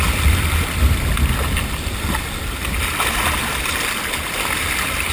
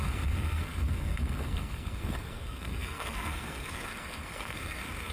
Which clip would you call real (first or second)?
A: first